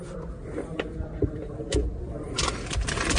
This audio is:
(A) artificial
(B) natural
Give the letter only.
A